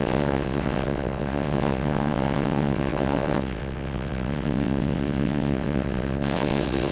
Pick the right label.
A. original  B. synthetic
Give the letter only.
B